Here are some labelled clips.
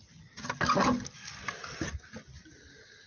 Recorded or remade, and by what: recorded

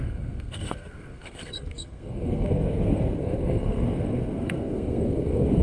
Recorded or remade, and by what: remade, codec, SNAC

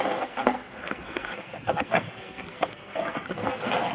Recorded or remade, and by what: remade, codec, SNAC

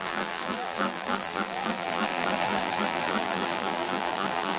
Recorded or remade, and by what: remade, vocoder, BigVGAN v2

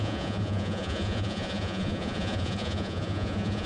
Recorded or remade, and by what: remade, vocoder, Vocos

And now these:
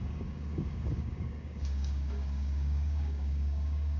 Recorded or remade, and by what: remade, codec, DAC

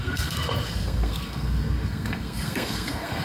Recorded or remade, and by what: remade, codec, SNAC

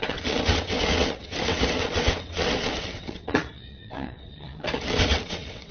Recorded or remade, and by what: remade, vocoder, WaveNeXt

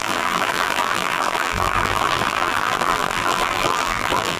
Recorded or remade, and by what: remade, vocoder, BigVGAN v2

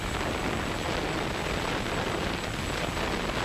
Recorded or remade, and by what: recorded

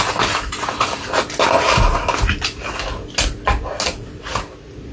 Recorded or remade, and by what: recorded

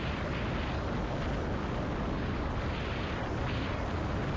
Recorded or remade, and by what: recorded